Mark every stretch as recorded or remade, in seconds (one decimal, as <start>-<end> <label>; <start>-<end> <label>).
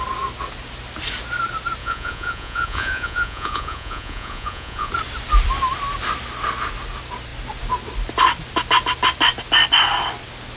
0.0-1.8 recorded; 1.8-4.9 remade; 4.9-10.6 recorded